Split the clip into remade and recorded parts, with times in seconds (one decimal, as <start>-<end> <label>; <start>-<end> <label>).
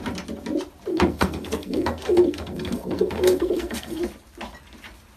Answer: 0.0-0.9 recorded; 0.9-4.0 remade; 4.0-5.2 recorded